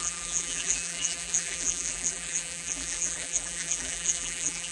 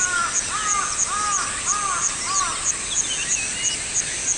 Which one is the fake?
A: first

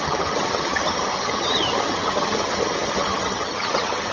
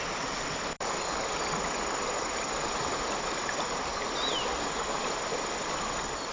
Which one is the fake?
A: first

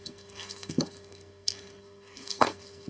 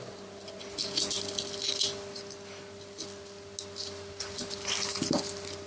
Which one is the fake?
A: first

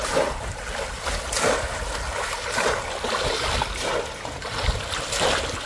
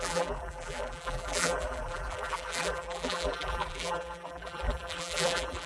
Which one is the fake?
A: second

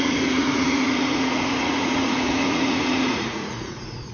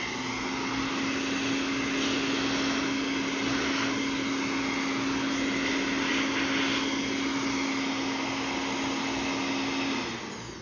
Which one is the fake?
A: first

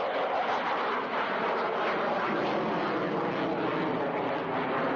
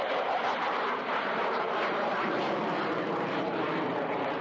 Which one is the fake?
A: second